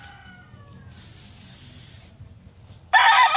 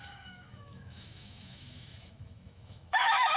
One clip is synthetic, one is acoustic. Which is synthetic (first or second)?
second